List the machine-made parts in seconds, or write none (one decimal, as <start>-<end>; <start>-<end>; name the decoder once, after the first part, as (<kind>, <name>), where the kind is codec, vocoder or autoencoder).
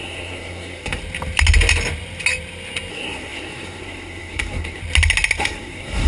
0.0-1.0 (codec, SNAC); 2.9-4.8; 5.4-6.1